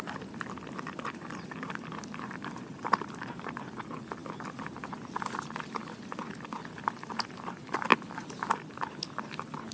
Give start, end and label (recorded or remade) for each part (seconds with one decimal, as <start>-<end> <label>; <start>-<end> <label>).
0.0-9.7 recorded